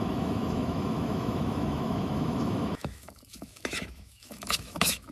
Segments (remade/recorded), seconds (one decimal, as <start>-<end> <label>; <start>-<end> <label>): 0.0-5.1 remade